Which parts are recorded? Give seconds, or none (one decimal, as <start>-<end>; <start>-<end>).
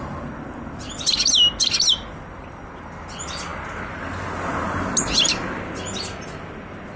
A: 0.0-7.0